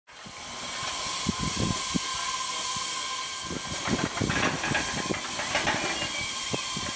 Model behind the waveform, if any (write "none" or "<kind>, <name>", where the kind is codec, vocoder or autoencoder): none